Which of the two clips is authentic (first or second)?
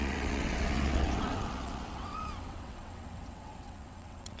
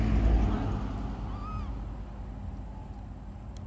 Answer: second